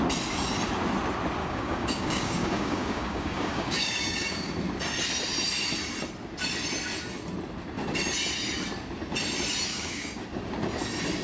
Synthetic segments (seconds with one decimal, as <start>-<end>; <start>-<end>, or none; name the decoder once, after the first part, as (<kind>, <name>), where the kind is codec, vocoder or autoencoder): 1.4-4.5 (codec, DAC); 9.7-10.2